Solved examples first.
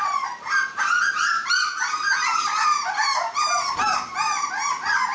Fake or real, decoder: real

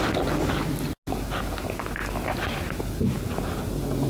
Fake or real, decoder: real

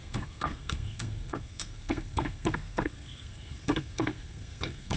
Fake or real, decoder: fake, codec, SNAC